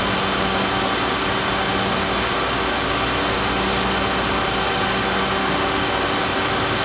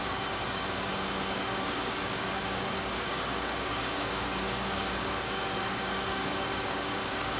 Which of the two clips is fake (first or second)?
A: second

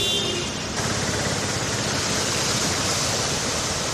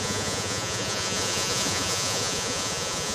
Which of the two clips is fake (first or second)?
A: second